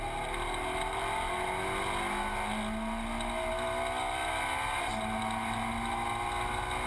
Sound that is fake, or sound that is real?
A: real